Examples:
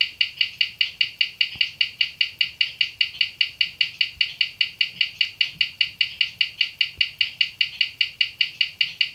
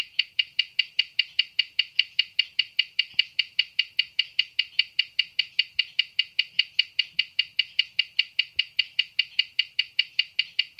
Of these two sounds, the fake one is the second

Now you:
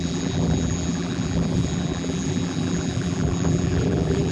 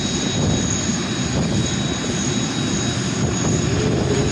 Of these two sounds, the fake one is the first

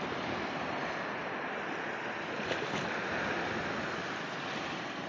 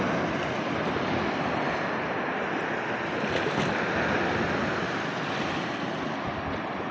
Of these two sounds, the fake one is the first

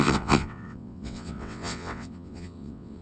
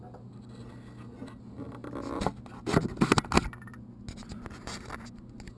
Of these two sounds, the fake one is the first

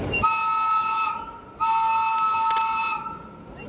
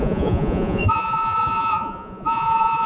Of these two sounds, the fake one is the second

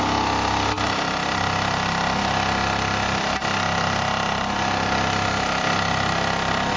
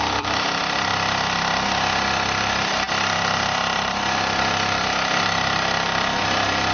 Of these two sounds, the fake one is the second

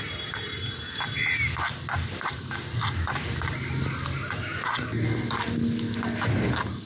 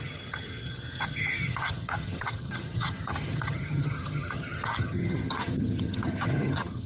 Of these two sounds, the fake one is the second